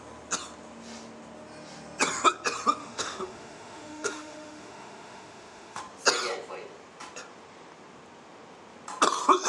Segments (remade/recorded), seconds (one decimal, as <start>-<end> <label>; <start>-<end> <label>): 0.0-2.8 recorded; 2.8-5.8 remade; 5.8-9.5 recorded